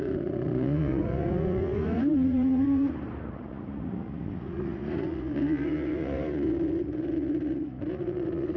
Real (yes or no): no